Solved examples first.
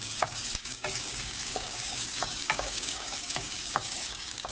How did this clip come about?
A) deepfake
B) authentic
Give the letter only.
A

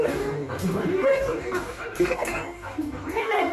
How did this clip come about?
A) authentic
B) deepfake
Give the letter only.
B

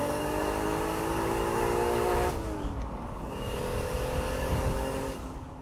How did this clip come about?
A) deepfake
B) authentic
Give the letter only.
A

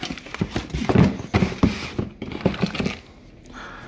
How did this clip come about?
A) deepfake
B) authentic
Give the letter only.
B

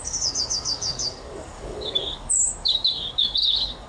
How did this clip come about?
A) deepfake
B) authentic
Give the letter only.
A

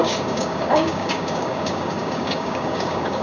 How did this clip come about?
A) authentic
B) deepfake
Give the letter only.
B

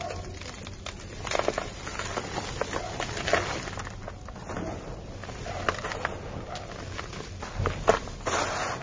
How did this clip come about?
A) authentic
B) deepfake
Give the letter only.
A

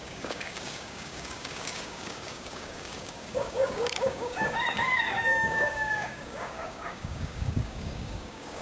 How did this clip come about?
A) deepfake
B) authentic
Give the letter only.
A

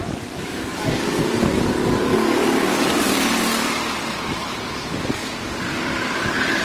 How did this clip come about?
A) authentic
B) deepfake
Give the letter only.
B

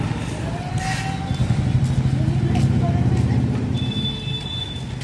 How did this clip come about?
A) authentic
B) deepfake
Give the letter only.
A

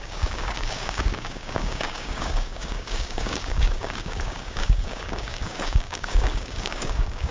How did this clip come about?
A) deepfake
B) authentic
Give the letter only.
A